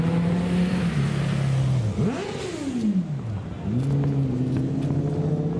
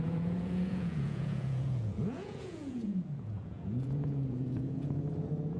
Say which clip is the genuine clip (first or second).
first